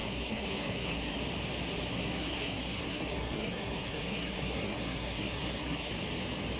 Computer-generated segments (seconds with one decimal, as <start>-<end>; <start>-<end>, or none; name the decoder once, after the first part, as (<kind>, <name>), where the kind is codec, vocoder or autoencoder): 0.0-1.2 (codec, SNAC); 1.9-5.9